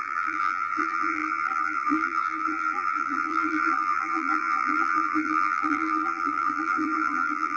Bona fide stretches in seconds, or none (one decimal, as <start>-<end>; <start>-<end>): none